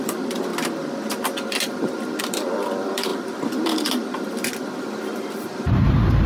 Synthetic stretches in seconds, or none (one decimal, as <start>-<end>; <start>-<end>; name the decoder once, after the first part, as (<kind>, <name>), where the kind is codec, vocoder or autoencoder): 0.0-0.5 (vocoder, BigVGAN v2); 2.2-6.3